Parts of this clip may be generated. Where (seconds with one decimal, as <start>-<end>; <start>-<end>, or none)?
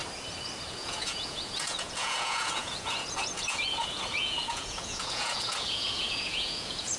0.7-7.0